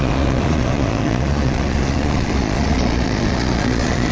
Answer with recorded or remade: remade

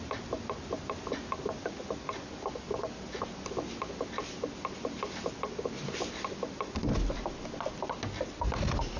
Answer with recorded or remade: recorded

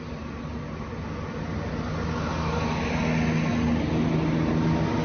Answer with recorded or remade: recorded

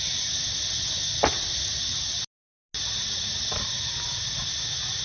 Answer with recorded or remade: recorded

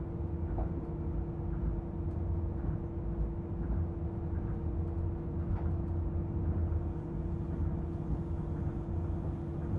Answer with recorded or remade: recorded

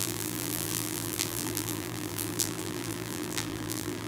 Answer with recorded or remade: remade